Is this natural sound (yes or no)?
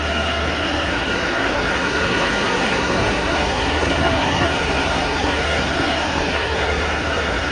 no